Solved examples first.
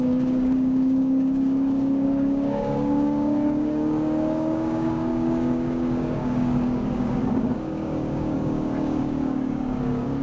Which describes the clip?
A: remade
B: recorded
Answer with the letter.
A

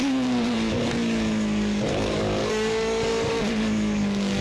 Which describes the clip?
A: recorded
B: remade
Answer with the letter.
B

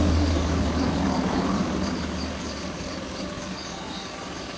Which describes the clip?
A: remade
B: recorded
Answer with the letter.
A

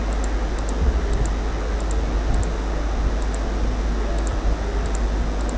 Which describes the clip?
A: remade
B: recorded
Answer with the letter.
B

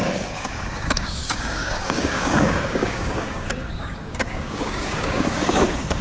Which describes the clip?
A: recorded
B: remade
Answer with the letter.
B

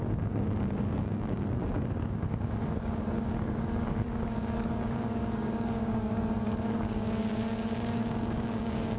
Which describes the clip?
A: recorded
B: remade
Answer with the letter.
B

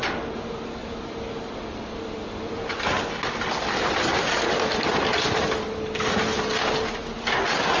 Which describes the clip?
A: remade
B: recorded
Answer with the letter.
B